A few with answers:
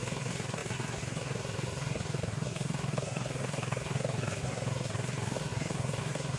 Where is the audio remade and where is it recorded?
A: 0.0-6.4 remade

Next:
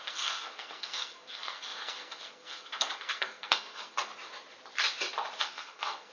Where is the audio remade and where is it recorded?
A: 0.0-4.1 remade; 4.1-5.4 recorded; 5.4-6.1 remade

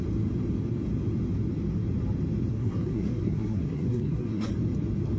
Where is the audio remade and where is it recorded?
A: 0.0-2.5 recorded; 2.5-4.5 remade; 4.5-5.2 recorded

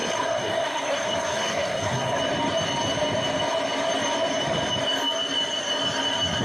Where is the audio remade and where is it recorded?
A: 0.0-2.2 remade; 2.2-6.4 recorded

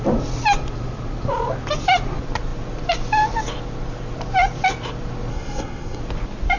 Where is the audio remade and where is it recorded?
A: 0.0-5.3 recorded; 5.3-6.0 remade; 6.0-6.6 recorded

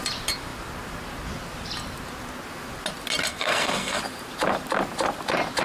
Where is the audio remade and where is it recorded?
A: 0.0-3.3 recorded; 3.3-4.0 remade; 4.0-5.6 recorded

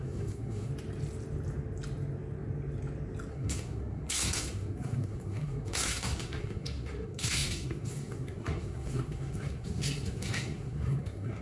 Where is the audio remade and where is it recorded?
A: 0.0-0.7 remade; 0.7-3.3 recorded; 3.3-11.4 remade

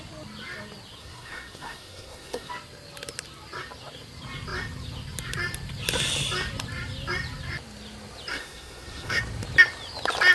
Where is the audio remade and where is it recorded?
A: 0.0-1.0 recorded; 1.0-2.5 remade; 2.5-8.3 recorded; 8.3-9.2 remade; 9.2-10.3 recorded